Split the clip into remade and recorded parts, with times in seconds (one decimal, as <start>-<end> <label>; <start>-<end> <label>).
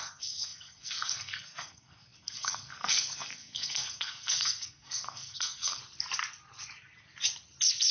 0.0-5.8 remade; 5.8-7.9 recorded